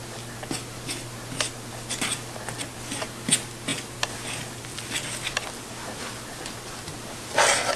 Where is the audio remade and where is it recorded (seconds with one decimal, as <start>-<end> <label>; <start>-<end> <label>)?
0.0-3.7 recorded; 3.7-6.0 remade; 6.0-7.8 recorded